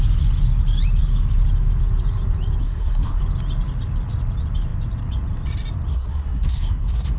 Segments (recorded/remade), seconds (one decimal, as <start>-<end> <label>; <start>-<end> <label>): 0.0-2.6 recorded; 2.6-3.2 remade; 3.2-5.9 recorded; 5.9-7.2 remade